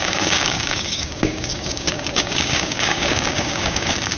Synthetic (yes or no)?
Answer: yes